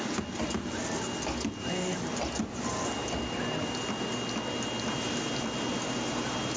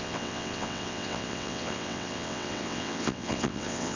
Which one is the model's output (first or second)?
second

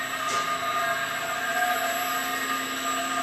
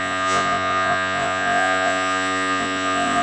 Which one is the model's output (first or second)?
second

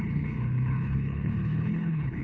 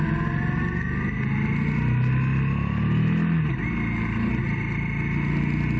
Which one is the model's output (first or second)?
first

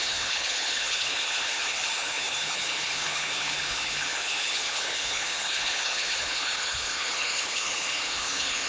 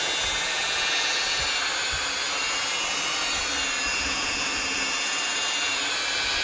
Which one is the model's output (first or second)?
first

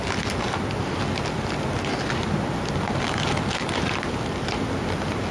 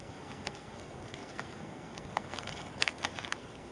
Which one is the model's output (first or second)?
second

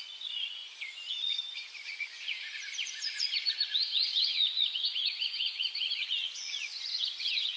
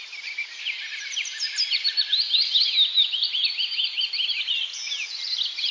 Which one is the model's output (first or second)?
first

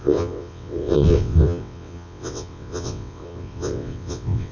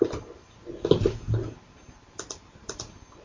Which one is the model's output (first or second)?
first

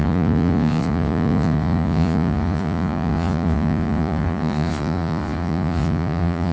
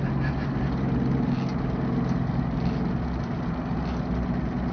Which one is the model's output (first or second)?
first